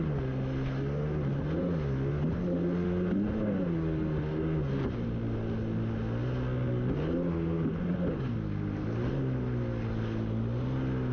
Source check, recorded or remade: recorded